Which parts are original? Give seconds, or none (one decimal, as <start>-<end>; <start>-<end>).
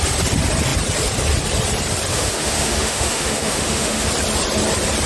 0.0-2.1; 4.1-5.1